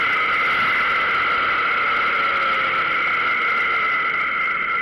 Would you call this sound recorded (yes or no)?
yes